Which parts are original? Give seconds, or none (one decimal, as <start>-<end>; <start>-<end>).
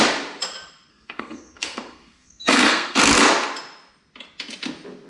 0.0-0.9; 3.0-5.1